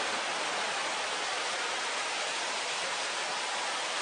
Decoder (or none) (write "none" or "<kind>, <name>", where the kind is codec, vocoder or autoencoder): none